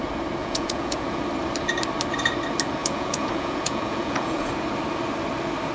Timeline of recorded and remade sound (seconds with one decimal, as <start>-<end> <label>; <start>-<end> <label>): 0.0-0.4 recorded; 0.4-1.2 remade; 1.2-2.8 recorded; 2.8-4.5 remade; 4.5-5.7 recorded